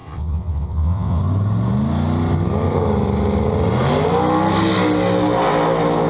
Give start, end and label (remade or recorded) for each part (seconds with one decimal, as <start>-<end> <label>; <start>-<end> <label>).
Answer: 0.0-1.2 remade; 1.2-6.1 recorded